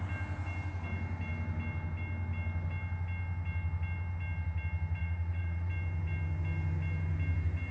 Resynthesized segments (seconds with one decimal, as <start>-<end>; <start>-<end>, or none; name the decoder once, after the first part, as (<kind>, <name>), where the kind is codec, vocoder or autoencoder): 5.0-5.7 (vocoder, Vocos)